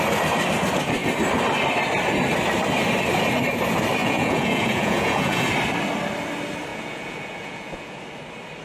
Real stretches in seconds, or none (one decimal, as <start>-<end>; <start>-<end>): 0.0-4.0; 5.5-6.7; 8.0-8.6